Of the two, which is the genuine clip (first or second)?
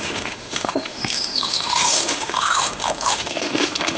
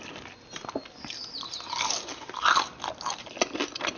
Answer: second